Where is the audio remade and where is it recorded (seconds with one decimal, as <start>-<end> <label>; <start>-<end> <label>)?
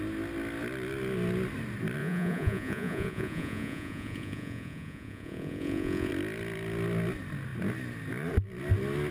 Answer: 0.0-2.0 recorded; 2.0-6.1 remade; 6.1-9.1 recorded